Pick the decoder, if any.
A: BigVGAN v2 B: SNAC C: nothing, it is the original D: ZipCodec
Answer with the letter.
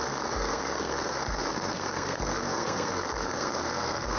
B